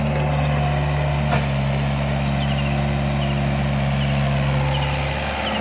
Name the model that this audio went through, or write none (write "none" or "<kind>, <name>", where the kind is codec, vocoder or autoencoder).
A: none